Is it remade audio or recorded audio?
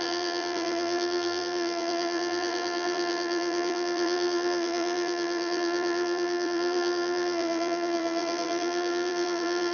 remade